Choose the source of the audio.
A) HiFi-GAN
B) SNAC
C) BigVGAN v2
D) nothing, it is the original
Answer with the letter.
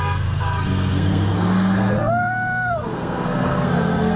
B